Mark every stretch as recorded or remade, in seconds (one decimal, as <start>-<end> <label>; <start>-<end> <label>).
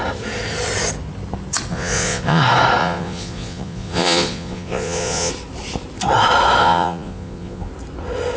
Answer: 0.0-1.7 recorded; 1.7-2.4 remade; 2.4-2.8 recorded; 2.8-5.3 remade; 5.3-6.6 recorded; 6.6-7.7 remade; 7.7-8.4 recorded